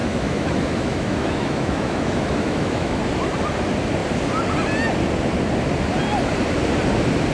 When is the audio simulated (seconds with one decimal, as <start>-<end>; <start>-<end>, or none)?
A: 0.0-3.0